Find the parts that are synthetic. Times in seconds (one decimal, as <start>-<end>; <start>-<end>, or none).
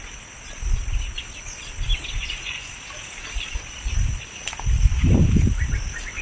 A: 2.2-2.7